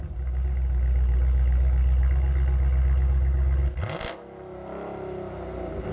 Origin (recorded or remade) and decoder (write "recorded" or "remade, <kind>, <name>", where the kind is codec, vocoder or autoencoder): recorded